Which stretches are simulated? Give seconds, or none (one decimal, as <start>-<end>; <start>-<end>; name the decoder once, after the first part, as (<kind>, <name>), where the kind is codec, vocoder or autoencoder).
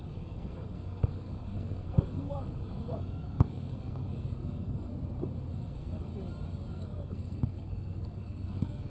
0.0-4.9 (codec, SNAC); 5.5-6.1; 6.7-8.9